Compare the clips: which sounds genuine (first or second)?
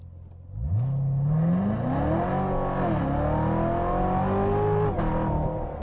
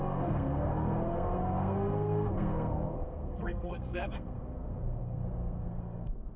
first